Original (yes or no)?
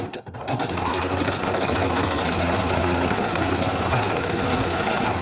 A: no